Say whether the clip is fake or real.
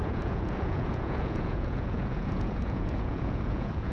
fake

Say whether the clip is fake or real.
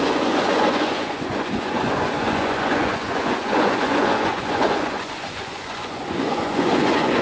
fake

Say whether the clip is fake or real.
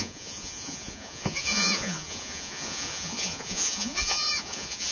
fake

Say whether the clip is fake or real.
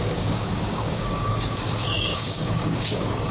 fake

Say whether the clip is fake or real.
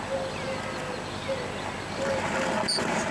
real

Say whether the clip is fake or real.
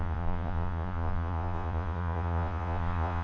fake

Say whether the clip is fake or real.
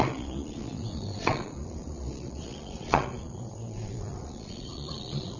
fake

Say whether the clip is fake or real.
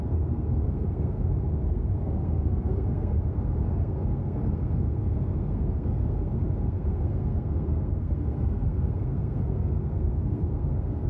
fake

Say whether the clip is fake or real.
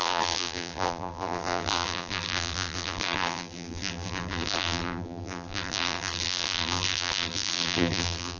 fake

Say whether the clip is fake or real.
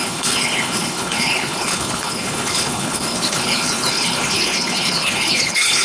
fake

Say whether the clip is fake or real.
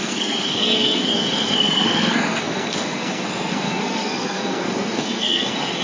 fake